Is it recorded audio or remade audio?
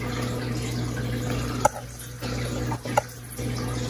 recorded